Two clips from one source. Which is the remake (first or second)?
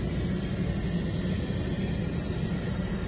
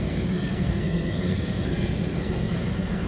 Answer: second